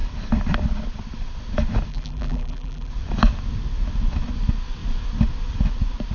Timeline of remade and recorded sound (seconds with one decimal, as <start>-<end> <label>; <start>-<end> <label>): 0.0-1.9 recorded; 1.9-2.9 remade; 2.9-6.1 recorded